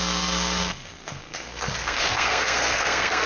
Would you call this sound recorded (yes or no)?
no